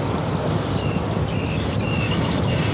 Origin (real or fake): real